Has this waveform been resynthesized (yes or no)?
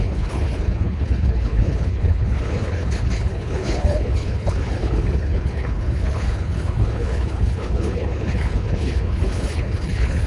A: yes